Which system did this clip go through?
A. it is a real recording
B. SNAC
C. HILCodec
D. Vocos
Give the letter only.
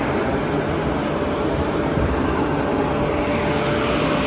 A